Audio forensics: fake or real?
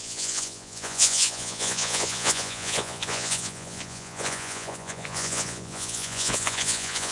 fake